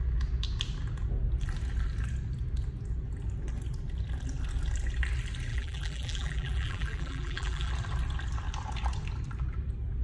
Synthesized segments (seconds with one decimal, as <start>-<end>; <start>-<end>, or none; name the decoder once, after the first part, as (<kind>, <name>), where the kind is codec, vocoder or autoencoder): 5.5-7.7 (vocoder, BigVGAN v2)